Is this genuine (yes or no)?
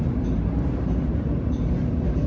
no